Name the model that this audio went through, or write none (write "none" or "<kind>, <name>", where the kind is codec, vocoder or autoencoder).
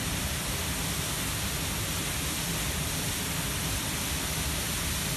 none